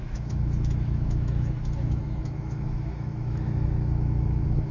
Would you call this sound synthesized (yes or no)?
yes